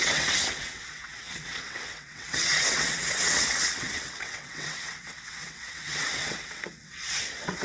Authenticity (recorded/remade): remade